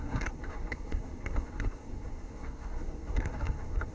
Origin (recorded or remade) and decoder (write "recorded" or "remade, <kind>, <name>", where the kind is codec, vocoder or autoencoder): remade, codec, SNAC